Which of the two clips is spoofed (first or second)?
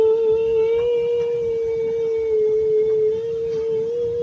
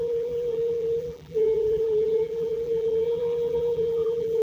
second